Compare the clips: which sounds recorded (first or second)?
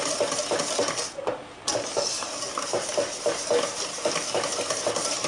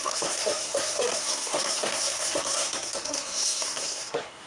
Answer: first